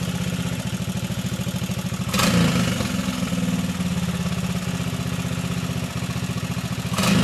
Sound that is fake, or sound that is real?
real